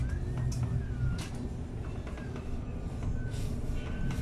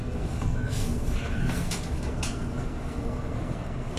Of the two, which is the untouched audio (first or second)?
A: first